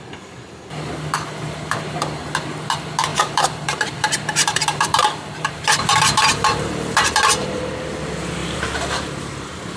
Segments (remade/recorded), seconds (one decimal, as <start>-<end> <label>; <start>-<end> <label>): 0.0-3.1 recorded; 3.1-7.7 remade; 7.7-8.4 recorded; 8.4-9.8 remade